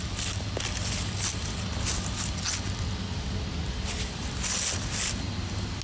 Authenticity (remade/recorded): recorded